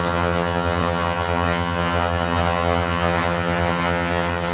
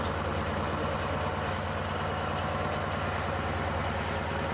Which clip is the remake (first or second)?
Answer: first